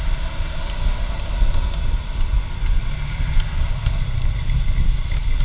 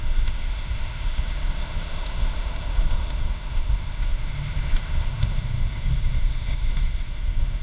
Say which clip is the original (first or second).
first